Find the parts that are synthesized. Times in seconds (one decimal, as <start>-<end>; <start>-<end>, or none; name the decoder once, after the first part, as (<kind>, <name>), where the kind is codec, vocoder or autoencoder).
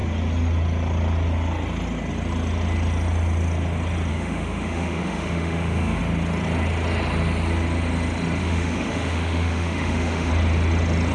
4.1-6.0 (autoencoder, DAC-VAE); 8.4-10.3